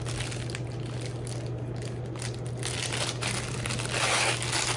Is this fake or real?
real